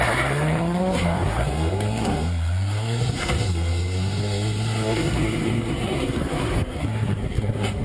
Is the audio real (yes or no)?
no